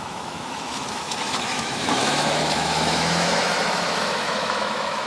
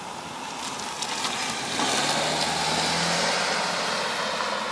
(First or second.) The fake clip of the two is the first